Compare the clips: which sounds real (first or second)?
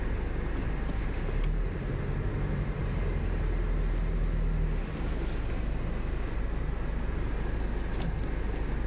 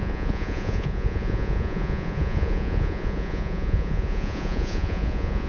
first